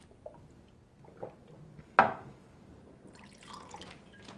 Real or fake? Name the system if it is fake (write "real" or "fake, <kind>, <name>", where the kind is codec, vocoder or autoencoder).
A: real